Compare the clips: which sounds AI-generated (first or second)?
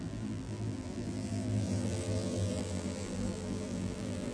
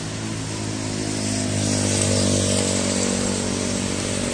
first